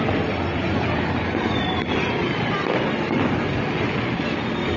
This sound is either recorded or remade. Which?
recorded